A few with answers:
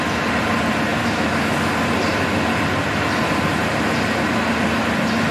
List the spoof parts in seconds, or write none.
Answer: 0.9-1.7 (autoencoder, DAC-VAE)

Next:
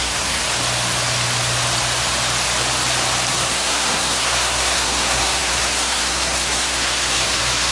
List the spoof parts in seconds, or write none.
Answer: 0.0-0.4 (codec, SNAC); 3.3-7.7

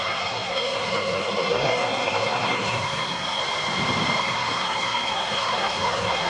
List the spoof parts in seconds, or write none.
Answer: 0.0-3.4 (codec, SNAC); 4.2-6.3

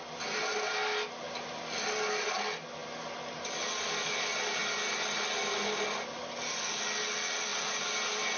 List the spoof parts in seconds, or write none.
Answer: none

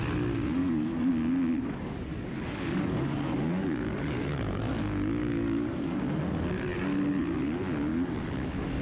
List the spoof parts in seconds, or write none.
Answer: 0.6-1.1 (codec, DAC); 2.1-4.6; 5.2-6.2; 7.9-8.8

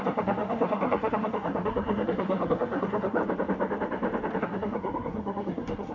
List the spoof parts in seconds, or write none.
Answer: 0.0-3.2 (codec, SNAC); 4.4-5.9

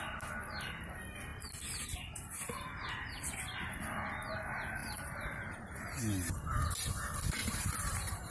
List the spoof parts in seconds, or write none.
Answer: 4.8-6.7 (vocoder, BigVGAN v2); 7.4-8.3

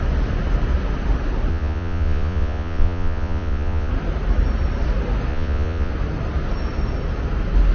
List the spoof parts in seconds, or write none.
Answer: 1.5-3.9 (vocoder, Vocos); 5.3-5.9